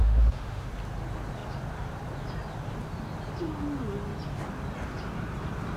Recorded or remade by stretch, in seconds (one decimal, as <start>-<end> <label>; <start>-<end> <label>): 0.0-0.7 remade; 0.7-5.8 recorded